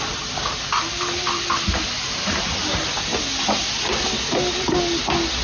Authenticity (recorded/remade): recorded